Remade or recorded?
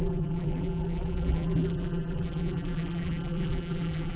remade